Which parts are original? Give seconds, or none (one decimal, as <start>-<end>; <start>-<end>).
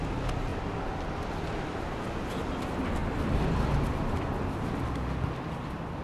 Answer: 0.0-6.0